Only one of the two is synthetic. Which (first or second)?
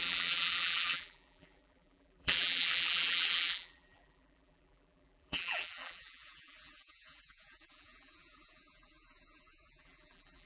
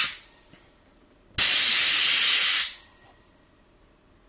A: first